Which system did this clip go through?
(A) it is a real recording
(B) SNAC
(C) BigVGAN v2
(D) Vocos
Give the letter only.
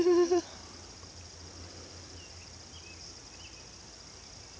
A